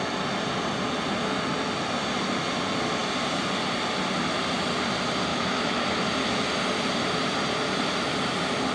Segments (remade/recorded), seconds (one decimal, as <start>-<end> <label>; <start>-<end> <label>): 0.0-5.3 recorded; 5.3-5.9 remade; 5.9-8.7 recorded